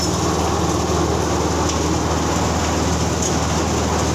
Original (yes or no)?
yes